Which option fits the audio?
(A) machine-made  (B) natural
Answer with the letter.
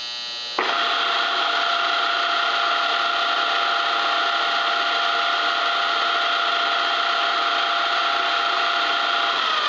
B